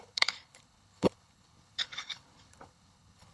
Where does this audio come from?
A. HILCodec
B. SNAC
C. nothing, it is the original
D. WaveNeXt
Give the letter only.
A